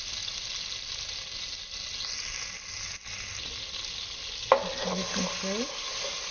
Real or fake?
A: real